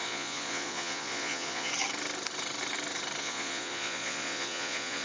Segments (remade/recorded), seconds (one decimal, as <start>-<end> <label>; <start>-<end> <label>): 0.0-1.7 remade; 1.7-3.2 recorded; 3.2-5.0 remade